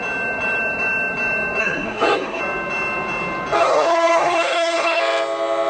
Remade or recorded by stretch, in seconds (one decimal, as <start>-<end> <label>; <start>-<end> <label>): 0.0-1.6 recorded; 1.6-2.4 remade; 2.4-3.6 recorded; 3.6-5.0 remade; 5.0-5.7 recorded